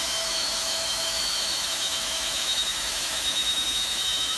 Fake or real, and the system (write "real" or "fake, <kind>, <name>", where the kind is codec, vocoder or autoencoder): fake, autoencoder, DAC-VAE